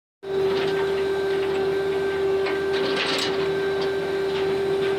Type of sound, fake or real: real